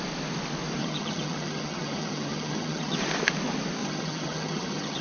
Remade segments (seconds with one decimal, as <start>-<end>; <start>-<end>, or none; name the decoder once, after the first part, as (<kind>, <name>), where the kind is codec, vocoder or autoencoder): 0.8-3.0 (vocoder, HiFi-GAN); 3.8-5.0